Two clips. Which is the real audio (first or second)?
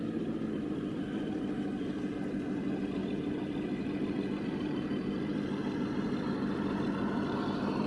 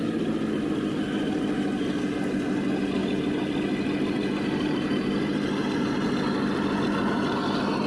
second